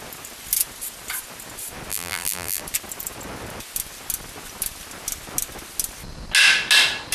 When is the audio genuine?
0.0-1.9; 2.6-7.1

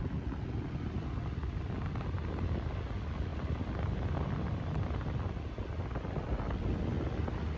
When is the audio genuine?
0.0-7.6

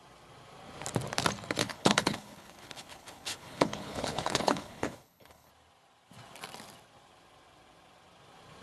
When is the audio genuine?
0.0-1.6; 5.5-8.6